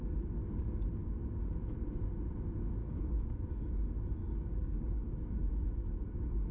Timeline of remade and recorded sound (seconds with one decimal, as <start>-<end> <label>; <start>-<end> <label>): 0.0-2.8 recorded; 2.8-3.6 remade; 3.6-4.2 recorded; 4.2-5.5 remade; 5.5-6.5 recorded